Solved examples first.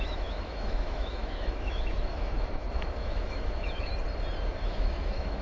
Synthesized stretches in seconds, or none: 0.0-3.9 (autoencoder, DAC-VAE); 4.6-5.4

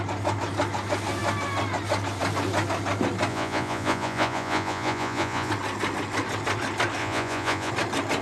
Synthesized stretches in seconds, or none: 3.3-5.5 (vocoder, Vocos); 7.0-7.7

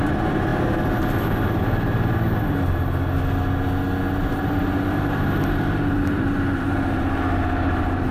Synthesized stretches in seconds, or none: 4.2-8.1 (vocoder, BigVGAN v2)

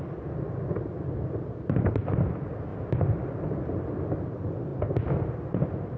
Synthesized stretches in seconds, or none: 0.0-2.7 (vocoder, BigVGAN v2); 4.3-6.0